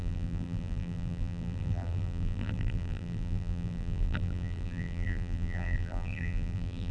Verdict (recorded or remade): remade